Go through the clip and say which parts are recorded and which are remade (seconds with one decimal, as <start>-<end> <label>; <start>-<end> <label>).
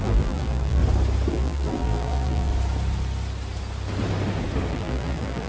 0.0-0.8 remade; 0.8-1.3 recorded; 1.3-2.5 remade; 2.5-4.7 recorded; 4.7-5.5 remade